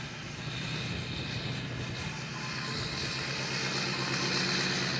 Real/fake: real